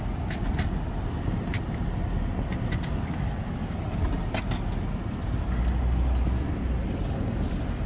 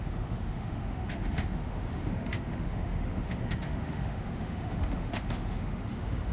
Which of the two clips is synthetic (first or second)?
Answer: second